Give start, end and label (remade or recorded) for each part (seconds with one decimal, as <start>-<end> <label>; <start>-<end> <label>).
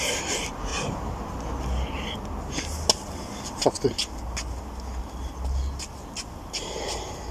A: 0.0-7.3 recorded